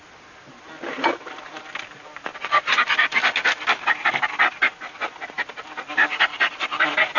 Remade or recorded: recorded